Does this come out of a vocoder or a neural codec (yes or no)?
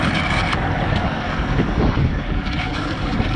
yes